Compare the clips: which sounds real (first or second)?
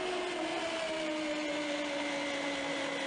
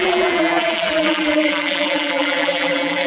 first